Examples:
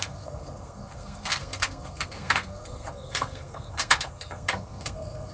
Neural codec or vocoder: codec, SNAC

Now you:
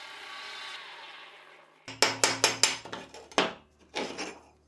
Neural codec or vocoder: none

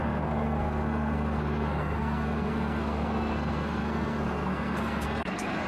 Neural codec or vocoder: codec, SNAC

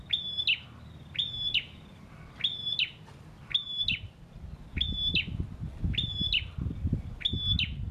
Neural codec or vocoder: none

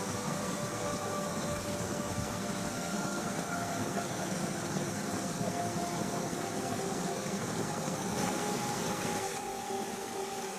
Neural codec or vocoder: codec, SNAC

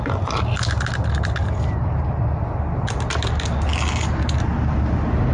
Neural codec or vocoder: none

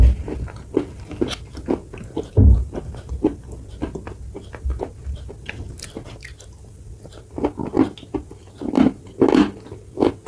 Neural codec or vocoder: none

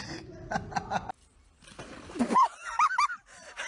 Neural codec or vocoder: none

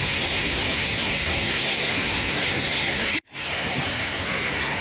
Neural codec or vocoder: codec, SNAC